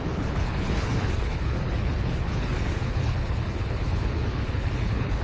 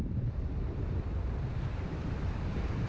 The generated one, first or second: first